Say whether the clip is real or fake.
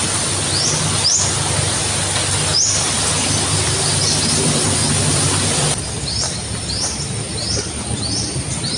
real